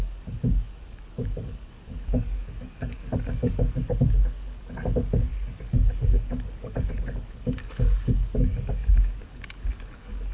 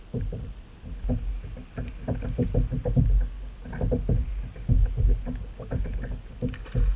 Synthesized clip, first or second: first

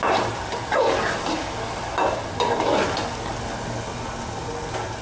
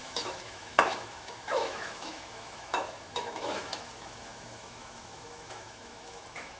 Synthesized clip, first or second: second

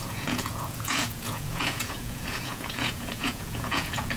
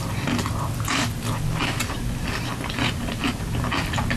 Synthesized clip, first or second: first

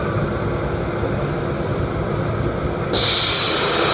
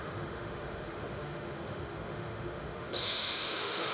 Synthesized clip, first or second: second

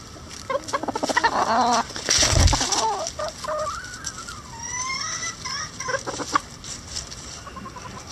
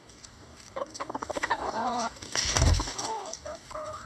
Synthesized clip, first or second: second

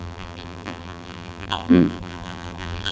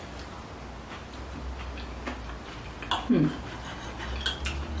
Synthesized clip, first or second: first